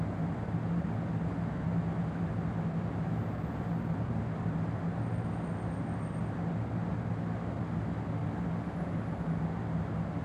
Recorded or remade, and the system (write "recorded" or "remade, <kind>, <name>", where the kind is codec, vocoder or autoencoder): recorded